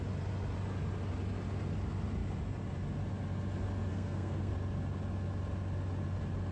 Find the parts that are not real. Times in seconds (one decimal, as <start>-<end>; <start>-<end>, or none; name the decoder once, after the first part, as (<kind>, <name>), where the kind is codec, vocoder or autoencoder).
3.9-4.5 (codec, SNAC)